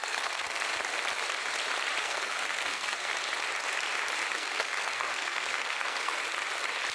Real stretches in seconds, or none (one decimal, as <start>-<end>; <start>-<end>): 0.7-2.0; 3.1-4.3; 6.2-6.9

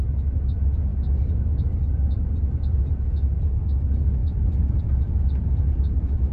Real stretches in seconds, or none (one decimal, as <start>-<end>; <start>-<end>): 0.0-0.9; 2.8-4.2; 4.8-6.3

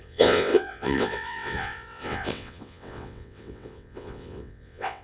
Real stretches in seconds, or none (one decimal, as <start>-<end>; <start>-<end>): none

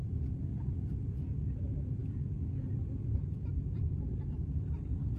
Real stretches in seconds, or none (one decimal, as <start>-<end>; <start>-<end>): 0.0-5.2

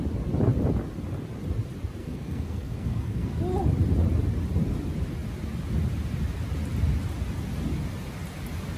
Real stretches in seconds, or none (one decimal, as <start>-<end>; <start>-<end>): 0.0-2.0; 3.4-8.8

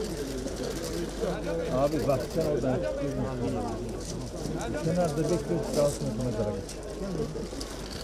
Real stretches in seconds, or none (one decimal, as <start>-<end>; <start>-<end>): 0.0-8.0

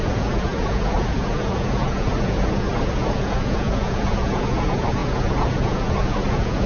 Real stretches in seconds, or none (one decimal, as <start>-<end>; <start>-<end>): none